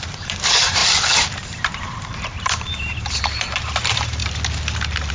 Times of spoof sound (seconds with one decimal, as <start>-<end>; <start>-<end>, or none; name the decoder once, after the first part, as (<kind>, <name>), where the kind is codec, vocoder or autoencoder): 0.0-4.2 (vocoder, BigVGAN v2)

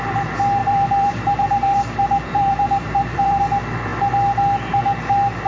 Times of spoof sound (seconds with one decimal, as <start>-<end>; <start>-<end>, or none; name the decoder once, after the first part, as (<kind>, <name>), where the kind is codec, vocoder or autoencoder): 0.6-3.4 (vocoder, BigVGAN v2)

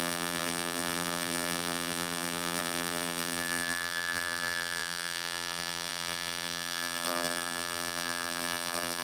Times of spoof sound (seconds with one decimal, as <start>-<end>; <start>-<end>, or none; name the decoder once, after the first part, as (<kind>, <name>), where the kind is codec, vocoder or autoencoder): 0.0-9.0 (vocoder, BigVGAN v2)

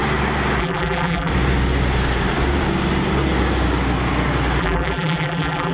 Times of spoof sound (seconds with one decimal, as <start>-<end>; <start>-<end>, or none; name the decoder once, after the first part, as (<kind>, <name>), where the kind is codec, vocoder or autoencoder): 0.6-1.3 (vocoder, BigVGAN v2); 4.6-5.7

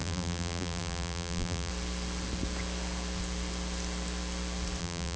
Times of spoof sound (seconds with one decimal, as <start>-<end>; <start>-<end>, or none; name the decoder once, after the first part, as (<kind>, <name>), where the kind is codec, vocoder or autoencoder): 0.0-1.7 (vocoder, BigVGAN v2); 4.8-5.2

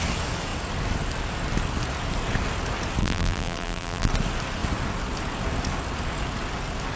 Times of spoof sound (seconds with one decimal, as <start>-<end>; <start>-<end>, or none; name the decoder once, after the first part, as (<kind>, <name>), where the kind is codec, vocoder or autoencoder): 3.0-4.1 (vocoder, BigVGAN v2)

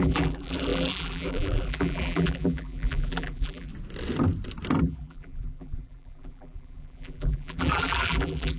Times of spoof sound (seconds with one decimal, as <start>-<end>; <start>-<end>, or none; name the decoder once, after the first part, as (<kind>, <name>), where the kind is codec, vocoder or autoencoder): 0.0-3.7 (vocoder, BigVGAN v2); 4.8-8.6

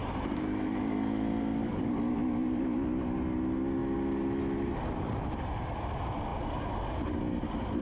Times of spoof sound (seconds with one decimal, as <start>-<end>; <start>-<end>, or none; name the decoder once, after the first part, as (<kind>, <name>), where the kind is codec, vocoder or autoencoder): 0.0-0.8 (vocoder, BigVGAN v2)